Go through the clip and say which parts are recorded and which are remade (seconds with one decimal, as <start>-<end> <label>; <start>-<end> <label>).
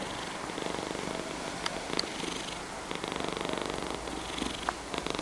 0.0-5.2 recorded